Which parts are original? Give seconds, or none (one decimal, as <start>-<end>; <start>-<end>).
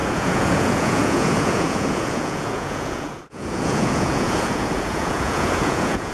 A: none